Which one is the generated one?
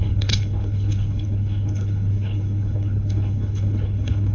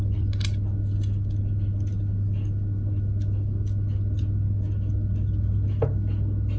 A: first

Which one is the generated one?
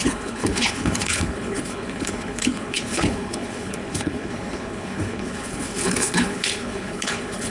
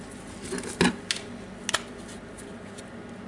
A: first